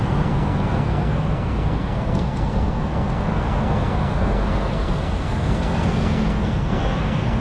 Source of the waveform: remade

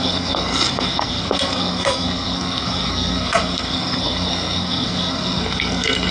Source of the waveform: remade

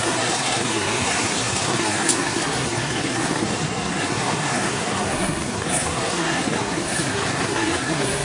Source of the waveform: remade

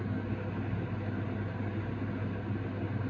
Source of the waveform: recorded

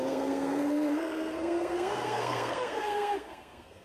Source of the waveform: remade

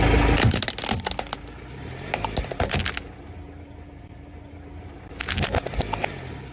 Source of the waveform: recorded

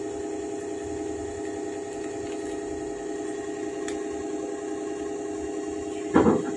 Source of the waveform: recorded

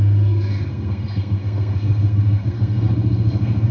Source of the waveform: remade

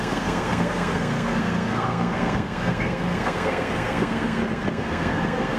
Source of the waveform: remade